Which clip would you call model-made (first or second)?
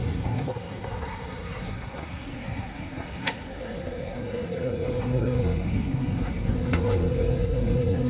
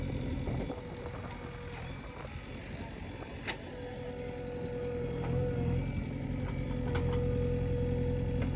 first